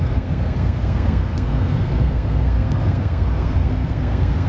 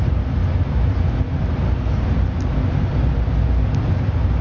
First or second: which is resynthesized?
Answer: first